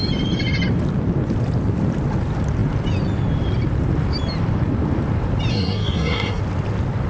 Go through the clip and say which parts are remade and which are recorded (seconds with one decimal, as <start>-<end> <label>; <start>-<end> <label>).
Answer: 0.0-5.5 recorded; 5.5-6.4 remade; 6.4-7.1 recorded